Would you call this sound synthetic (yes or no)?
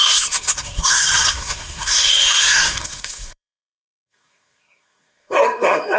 yes